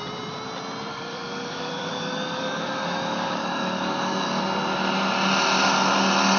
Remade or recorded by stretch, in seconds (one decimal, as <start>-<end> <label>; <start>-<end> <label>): 0.0-0.9 recorded; 0.9-4.4 remade; 4.4-6.4 recorded